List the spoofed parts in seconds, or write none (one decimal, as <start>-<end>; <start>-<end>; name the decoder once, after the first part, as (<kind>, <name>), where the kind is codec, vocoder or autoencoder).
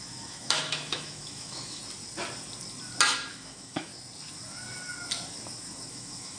0.0-1.8 (autoencoder, DAC-VAE); 3.3-3.9; 5.9-6.4